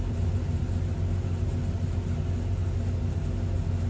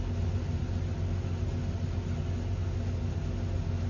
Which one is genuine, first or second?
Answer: second